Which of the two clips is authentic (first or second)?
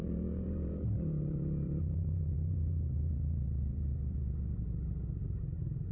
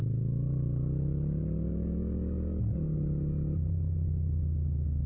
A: second